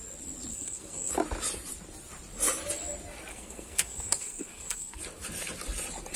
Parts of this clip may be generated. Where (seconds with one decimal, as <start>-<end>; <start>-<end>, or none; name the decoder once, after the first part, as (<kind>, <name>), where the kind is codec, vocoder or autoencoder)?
0.5-1.1 (codec, SNAC); 3.3-5.0